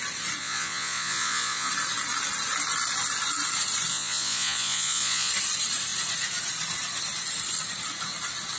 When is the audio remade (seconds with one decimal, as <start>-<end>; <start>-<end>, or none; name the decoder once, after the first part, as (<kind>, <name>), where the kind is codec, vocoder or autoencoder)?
0.4-1.7 (vocoder, Vocos); 3.9-5.3